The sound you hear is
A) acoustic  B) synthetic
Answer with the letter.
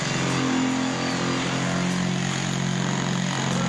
A